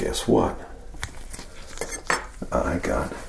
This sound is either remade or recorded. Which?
recorded